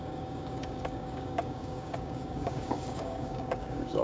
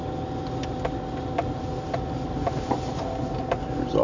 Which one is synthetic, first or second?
first